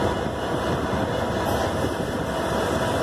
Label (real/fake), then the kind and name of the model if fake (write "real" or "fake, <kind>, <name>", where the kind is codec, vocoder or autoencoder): real